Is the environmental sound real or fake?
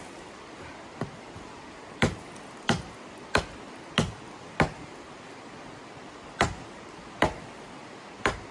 real